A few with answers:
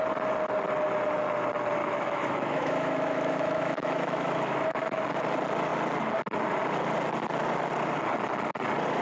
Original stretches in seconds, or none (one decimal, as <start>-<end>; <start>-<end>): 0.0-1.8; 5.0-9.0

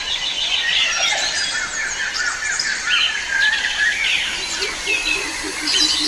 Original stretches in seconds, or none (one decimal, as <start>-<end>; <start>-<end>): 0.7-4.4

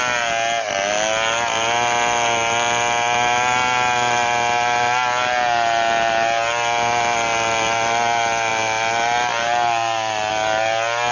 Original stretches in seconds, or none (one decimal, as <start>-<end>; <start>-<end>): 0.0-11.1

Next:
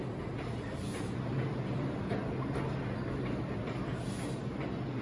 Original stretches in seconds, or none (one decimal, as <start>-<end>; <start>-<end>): 0.0-5.0

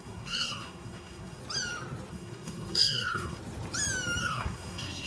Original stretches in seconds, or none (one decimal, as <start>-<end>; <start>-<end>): 1.4-2.1; 3.4-4.2